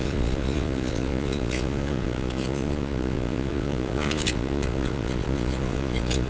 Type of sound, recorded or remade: remade